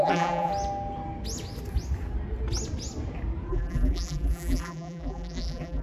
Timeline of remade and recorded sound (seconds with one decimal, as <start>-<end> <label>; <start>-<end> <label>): 0.0-0.5 remade; 0.5-3.5 recorded; 3.5-5.8 remade